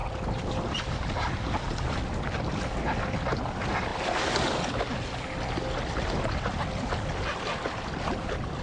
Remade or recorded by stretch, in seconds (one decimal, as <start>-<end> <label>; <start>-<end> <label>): 0.0-8.6 recorded